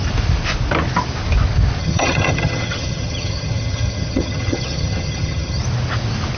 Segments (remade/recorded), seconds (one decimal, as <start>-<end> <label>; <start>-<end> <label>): 0.0-1.8 recorded; 1.8-5.6 remade; 5.6-6.4 recorded